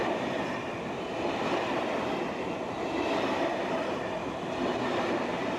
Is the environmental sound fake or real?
real